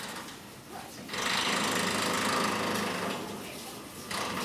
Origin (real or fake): real